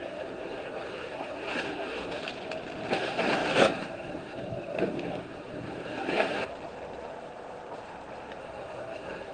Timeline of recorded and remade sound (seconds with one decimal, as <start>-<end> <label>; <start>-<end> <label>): 0.0-2.2 remade; 2.2-2.9 recorded; 2.9-6.5 remade; 6.5-8.4 recorded; 8.4-9.3 remade